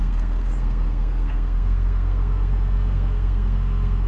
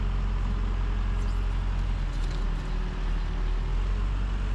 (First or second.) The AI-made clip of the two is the first